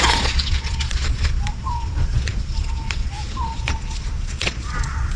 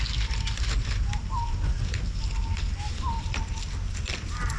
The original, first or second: second